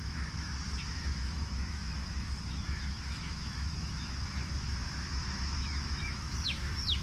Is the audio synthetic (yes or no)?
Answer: yes